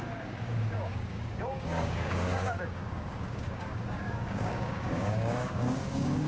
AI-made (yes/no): yes